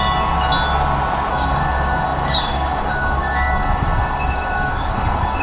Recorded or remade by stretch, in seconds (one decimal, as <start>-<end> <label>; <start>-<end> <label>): 0.0-1.3 recorded; 1.3-5.4 remade